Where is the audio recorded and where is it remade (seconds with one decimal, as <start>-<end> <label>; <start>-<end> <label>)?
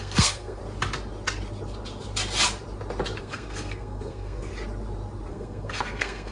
0.0-0.6 remade; 0.6-3.2 recorded; 3.2-4.5 remade; 4.5-5.3 recorded; 5.3-6.3 remade